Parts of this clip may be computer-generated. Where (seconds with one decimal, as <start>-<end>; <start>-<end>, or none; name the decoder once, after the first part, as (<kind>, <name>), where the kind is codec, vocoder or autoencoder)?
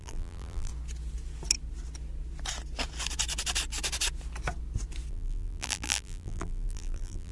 0.0-0.7 (vocoder, BigVGAN v2); 5.1-7.3